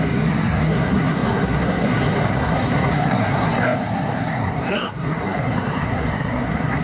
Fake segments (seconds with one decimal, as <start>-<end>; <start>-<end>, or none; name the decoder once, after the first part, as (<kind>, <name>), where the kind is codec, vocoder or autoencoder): 0.0-6.8 (codec, SNAC)